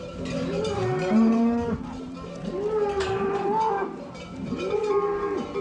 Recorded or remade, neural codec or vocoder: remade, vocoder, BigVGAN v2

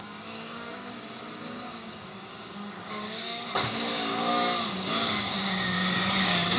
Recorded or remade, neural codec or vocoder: remade, codec, DAC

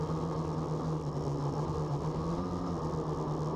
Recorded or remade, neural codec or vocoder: recorded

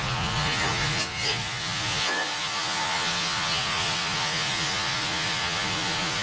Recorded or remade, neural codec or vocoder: remade, vocoder, Vocos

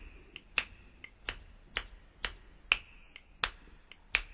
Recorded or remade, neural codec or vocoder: recorded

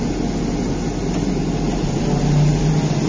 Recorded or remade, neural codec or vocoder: recorded